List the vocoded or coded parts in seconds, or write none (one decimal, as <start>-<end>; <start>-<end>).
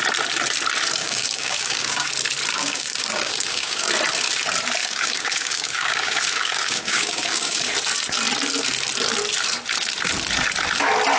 1.0-2.1; 2.5-3.9; 4.8-7.7